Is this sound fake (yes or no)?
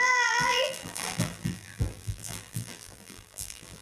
yes